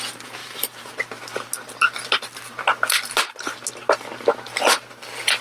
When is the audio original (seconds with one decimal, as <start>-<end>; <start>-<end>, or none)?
0.0-0.4; 0.9-5.4

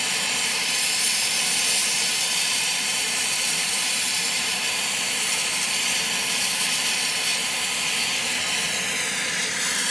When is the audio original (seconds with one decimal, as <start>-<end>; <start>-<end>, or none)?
0.0-1.8; 6.0-9.9

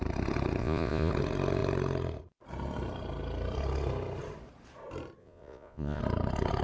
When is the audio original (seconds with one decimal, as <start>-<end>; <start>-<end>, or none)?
0.0-0.6; 1.1-5.2; 6.0-6.6

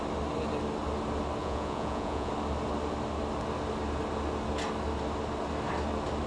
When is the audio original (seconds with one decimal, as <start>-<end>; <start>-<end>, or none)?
0.0-1.4; 2.3-6.3

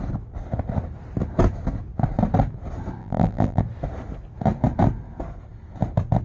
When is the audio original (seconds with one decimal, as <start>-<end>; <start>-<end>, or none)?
0.0-3.0; 3.6-6.2

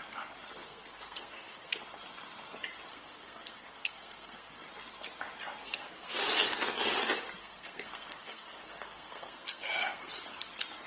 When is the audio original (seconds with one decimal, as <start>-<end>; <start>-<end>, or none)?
0.0-0.6; 1.8-2.9; 4.6-5.6; 6.2-7.4; 10.1-10.9

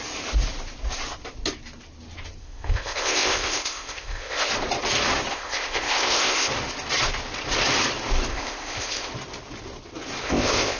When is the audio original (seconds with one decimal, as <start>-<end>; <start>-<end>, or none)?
0.0-2.4; 4.5-5.3; 6.5-8.3; 9.1-10.2

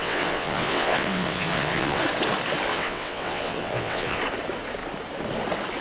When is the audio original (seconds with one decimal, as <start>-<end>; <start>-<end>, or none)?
2.0-2.7; 4.2-5.8